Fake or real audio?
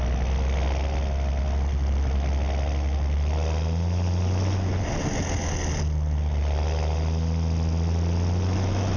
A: real